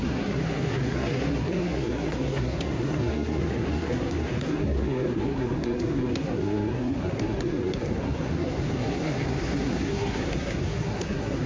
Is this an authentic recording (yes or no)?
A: no